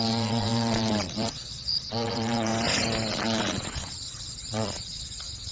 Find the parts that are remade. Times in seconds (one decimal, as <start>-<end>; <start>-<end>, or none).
0.0-2.5; 3.1-5.5